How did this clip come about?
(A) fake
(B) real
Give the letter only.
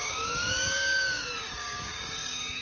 A